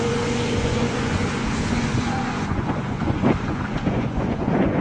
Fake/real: fake